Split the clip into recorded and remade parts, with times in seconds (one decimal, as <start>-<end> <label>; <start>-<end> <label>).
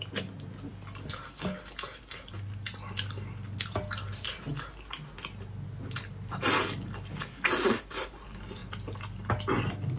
0.0-10.0 recorded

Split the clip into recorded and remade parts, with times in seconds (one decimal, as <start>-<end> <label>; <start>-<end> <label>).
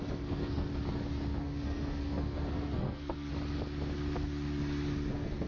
0.0-0.7 remade; 0.7-1.4 recorded; 1.4-3.3 remade; 3.3-5.1 recorded; 5.1-5.5 remade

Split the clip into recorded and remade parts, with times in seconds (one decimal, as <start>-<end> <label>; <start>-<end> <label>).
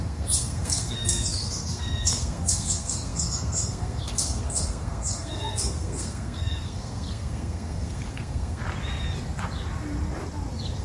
0.0-8.6 remade; 8.6-10.8 recorded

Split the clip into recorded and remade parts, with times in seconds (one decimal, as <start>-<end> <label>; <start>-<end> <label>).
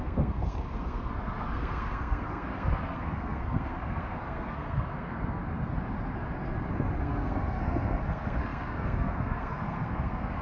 0.0-5.4 remade; 5.4-7.0 recorded; 7.0-10.4 remade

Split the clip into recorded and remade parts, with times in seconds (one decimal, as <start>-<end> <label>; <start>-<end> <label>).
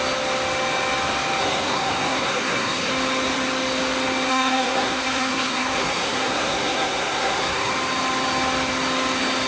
0.0-1.4 recorded; 1.4-2.9 remade; 2.9-4.3 recorded; 4.3-7.7 remade; 7.7-9.5 recorded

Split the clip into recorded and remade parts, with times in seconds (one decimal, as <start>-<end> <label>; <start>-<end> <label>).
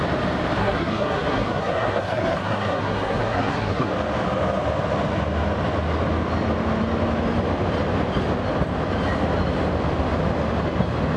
0.0-0.6 recorded; 0.6-3.9 remade; 3.9-11.2 recorded